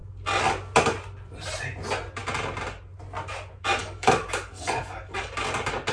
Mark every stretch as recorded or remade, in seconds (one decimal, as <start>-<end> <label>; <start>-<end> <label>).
0.0-3.8 recorded; 3.8-5.3 remade; 5.3-5.9 recorded